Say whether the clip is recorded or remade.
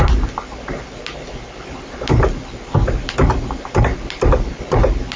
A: recorded